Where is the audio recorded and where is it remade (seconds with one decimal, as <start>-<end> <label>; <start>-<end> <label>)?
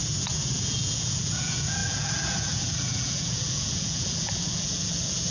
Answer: 0.0-5.3 remade